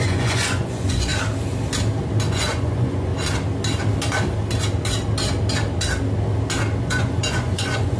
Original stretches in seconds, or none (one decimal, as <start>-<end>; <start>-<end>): 1.1-2.3; 3.1-6.8